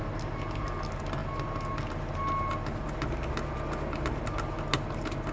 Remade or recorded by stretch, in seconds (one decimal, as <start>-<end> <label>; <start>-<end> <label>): 0.0-5.3 recorded